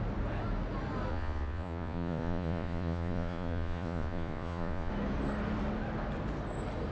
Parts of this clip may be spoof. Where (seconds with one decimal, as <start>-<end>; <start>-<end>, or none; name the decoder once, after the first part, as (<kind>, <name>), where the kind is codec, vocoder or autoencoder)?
1.1-4.9 (vocoder, Vocos)